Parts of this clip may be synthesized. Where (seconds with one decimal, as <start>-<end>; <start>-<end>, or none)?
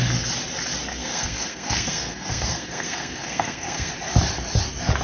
0.9-3.9